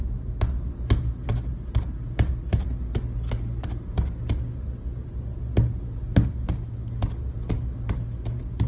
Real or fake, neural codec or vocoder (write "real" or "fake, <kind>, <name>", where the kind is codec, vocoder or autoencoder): real